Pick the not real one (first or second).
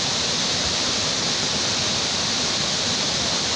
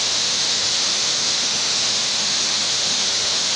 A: second